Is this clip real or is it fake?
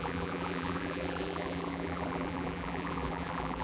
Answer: fake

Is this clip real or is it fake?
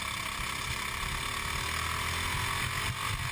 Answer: real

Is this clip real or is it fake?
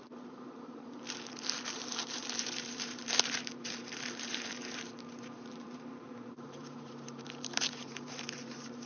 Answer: fake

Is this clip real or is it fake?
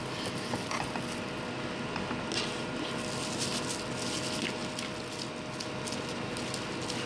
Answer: real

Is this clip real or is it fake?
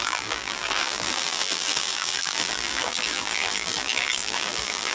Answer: fake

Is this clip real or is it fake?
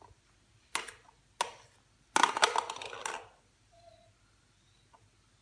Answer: real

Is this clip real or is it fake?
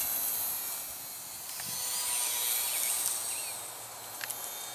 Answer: real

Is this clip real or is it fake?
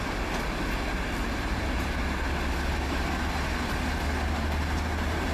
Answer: real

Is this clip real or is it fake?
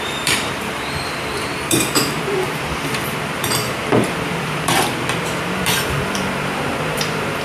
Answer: fake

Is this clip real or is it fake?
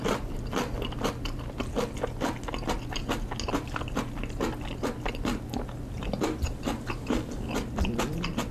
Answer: real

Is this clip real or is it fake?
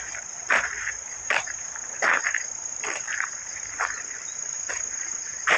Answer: fake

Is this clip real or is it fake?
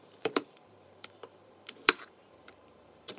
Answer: fake